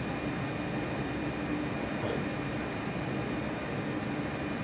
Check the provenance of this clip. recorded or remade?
recorded